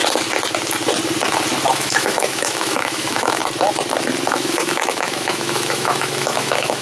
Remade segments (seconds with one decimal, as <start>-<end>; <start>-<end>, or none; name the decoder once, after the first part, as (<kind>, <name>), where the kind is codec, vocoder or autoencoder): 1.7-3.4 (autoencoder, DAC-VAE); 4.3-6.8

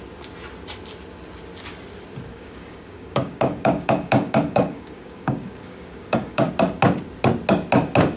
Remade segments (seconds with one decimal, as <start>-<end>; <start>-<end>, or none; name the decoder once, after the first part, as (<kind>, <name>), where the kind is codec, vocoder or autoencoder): 2.3-6.5 (codec, DAC)

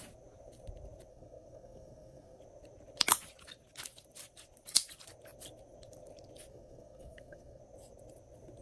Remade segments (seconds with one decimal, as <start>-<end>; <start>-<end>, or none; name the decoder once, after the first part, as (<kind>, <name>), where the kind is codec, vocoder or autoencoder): 1.1-2.4 (codec, SNAC); 6.5-7.6

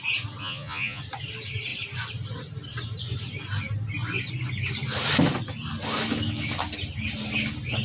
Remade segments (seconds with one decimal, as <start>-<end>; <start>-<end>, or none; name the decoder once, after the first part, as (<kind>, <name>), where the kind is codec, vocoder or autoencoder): 0.4-1.0 (vocoder, Vocos)

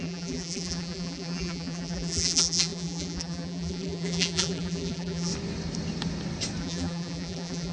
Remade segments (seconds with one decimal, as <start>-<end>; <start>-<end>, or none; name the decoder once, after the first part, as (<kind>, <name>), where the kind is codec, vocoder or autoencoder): 0.0-5.3 (vocoder, BigVGAN v2); 6.6-7.7

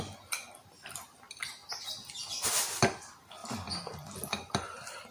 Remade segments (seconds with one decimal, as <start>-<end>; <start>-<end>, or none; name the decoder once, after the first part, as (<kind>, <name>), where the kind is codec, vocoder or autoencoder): none

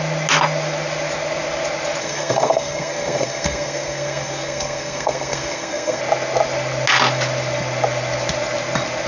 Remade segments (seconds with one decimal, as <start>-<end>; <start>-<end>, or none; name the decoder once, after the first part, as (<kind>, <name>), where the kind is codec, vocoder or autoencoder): 2.0-6.0 (codec, SNAC)

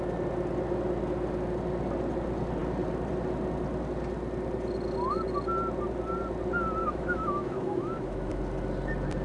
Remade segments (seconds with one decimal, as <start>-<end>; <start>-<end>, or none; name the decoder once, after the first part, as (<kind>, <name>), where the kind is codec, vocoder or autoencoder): 6.8-8.4 (autoencoder, DAC-VAE)